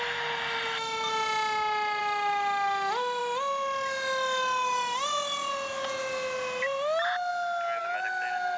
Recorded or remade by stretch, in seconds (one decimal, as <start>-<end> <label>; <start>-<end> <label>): 0.0-8.6 recorded